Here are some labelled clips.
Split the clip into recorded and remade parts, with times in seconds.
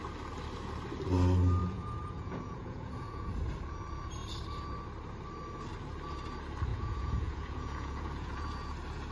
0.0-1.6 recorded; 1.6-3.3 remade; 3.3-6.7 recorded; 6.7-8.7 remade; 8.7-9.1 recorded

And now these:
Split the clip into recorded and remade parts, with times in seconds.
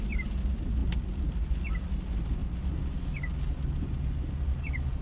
0.0-5.0 recorded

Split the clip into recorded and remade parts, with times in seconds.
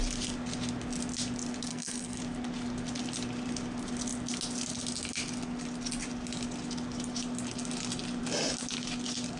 0.0-1.7 recorded; 1.7-2.2 remade; 2.2-9.4 recorded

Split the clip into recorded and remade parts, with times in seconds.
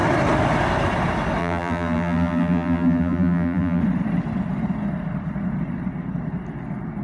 0.0-1.4 recorded; 1.4-3.8 remade; 3.8-7.0 recorded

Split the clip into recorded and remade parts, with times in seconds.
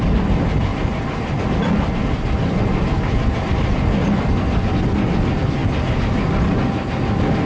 0.0-7.5 recorded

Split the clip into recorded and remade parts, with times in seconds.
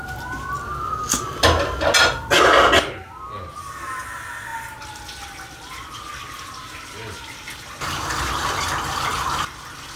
0.0-10.0 recorded